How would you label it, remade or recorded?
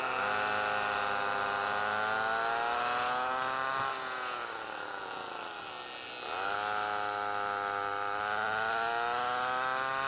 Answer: recorded